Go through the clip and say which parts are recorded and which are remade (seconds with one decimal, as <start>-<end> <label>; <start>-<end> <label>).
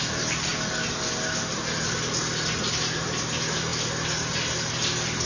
0.0-5.3 recorded